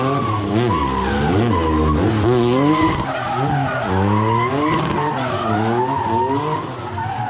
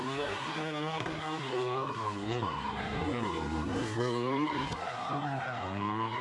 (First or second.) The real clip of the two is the first